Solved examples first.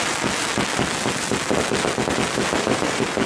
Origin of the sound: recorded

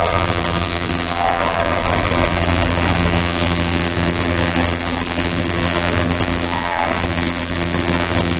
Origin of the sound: remade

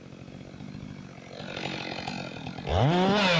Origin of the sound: recorded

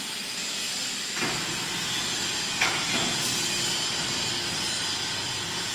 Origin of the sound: recorded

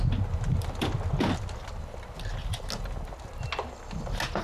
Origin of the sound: recorded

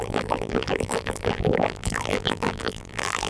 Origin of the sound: remade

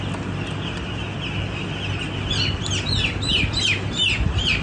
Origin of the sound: recorded